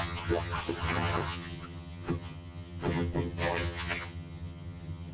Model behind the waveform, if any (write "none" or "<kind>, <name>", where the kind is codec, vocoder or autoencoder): vocoder, HiFi-GAN